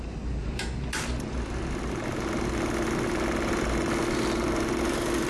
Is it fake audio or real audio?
real